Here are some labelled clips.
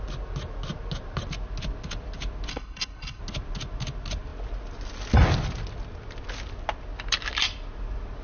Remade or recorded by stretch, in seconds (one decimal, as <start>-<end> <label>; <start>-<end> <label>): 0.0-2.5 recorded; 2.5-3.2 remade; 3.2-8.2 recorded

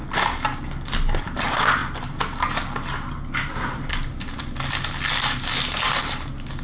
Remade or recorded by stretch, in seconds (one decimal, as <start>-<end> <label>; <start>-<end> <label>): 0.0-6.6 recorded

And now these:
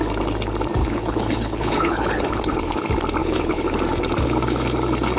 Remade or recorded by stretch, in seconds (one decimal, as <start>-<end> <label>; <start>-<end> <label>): 0.0-0.8 recorded; 0.8-2.8 remade; 2.8-3.2 recorded; 3.2-3.7 remade; 3.7-5.2 recorded

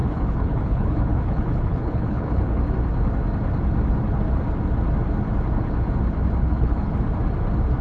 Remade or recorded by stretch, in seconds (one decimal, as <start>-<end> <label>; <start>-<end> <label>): 0.0-2.6 remade; 2.6-6.4 recorded; 6.4-6.9 remade; 6.9-7.8 recorded